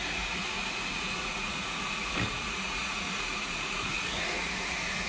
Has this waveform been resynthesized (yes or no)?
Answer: yes